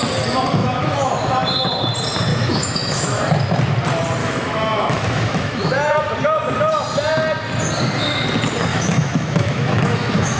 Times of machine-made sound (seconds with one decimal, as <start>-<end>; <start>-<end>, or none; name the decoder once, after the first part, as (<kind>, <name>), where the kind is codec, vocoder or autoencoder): 0.6-1.1 (autoencoder, DAC-VAE); 2.3-3.2; 4.2-6.0; 8.7-10.4